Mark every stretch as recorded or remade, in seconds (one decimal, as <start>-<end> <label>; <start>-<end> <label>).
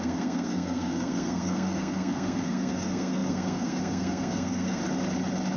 0.0-4.8 remade; 4.8-5.6 recorded